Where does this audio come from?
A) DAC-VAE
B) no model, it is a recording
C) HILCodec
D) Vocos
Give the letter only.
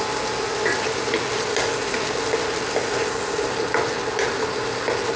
B